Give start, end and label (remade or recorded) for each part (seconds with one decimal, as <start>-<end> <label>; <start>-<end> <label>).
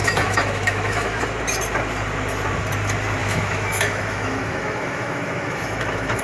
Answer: 0.0-1.2 remade; 1.2-3.2 recorded; 3.2-6.2 remade